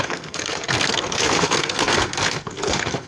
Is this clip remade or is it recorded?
remade